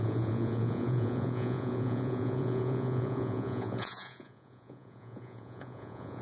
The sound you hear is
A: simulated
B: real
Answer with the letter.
A